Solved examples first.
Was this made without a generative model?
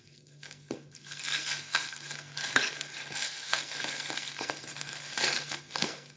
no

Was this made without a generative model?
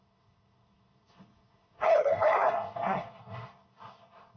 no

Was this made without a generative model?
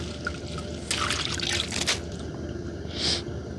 yes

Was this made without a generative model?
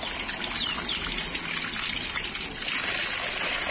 yes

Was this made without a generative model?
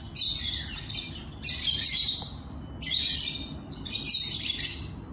yes